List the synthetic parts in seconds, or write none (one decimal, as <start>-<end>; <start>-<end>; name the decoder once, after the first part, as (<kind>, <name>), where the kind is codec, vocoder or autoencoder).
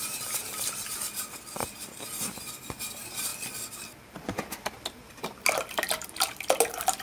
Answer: 0.0-0.4 (vocoder, BigVGAN v2); 0.9-3.3; 5.0-7.0